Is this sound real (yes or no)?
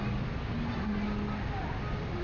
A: yes